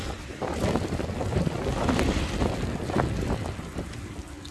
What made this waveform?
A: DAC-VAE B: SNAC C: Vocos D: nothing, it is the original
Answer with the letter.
D